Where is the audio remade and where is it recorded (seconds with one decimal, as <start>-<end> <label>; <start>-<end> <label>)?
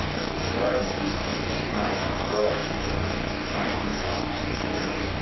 0.0-5.2 remade